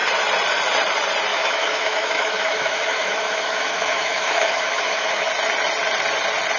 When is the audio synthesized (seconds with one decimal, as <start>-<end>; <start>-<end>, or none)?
1.3-5.3

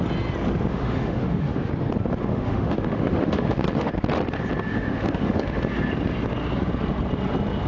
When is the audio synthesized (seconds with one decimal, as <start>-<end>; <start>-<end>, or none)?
0.7-1.7; 2.3-3.9; 4.7-5.6

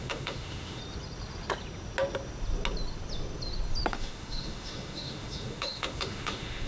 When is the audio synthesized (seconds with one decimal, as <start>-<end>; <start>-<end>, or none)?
0.0-0.8; 3.9-6.7

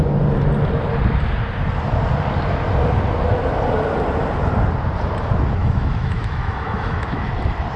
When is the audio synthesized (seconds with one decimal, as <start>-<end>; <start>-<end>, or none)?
5.6-7.2

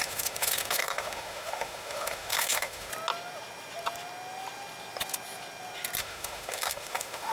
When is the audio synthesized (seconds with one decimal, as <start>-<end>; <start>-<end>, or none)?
0.0-2.9; 6.0-7.3

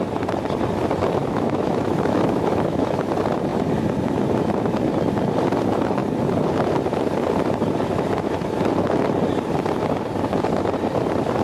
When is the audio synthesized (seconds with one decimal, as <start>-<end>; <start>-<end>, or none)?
1.2-3.1

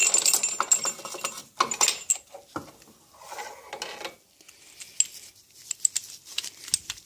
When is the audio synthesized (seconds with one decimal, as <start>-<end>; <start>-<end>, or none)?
none